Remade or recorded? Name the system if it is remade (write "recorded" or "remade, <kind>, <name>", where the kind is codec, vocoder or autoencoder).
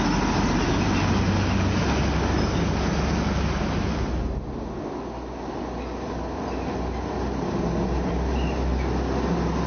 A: recorded